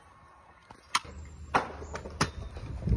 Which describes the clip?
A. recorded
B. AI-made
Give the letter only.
A